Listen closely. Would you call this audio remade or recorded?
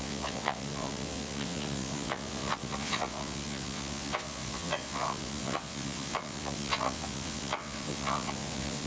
remade